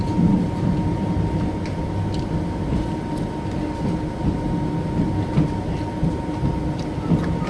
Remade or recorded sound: recorded